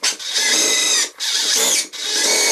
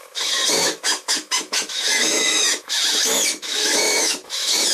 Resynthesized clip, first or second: second